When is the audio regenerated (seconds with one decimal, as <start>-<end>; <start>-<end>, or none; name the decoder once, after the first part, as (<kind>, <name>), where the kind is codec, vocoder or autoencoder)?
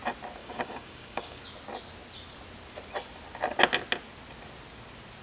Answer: 0.4-1.4 (codec, DAC)